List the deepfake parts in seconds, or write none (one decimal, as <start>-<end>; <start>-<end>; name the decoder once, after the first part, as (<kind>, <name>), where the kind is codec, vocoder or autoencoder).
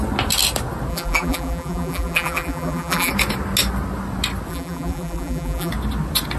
0.9-3.1 (vocoder, BigVGAN v2); 4.5-5.7